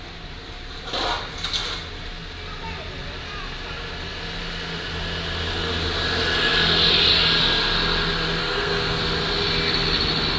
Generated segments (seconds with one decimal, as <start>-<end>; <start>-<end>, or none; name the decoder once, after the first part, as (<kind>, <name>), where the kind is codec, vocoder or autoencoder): 8.4-9.0 (codec, SNAC)

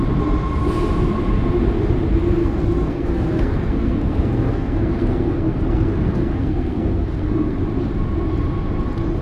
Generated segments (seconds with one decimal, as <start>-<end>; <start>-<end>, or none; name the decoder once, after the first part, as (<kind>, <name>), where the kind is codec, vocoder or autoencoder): 2.4-7.6 (codec, SNAC)

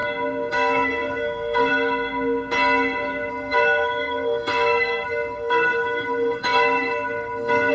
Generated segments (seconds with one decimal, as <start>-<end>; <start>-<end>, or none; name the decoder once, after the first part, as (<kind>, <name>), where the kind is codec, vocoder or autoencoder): 0.5-1.7 (codec, SNAC); 3.3-7.7